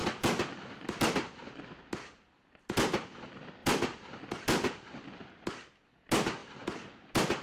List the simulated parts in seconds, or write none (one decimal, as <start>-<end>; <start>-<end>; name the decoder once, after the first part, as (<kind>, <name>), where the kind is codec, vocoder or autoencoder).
3.6-4.2 (vocoder, BigVGAN v2)